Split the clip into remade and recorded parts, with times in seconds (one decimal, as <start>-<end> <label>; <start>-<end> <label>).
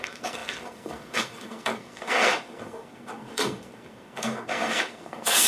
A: 0.0-5.5 remade